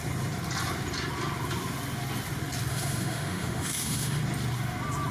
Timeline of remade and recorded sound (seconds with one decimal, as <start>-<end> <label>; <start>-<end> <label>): 0.0-2.7 recorded; 2.7-4.2 remade; 4.2-5.1 recorded